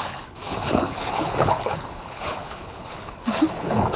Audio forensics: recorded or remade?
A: remade